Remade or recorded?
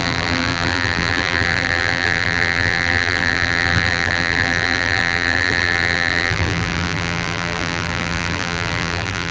remade